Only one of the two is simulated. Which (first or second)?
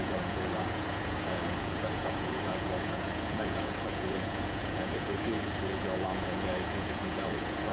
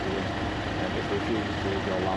first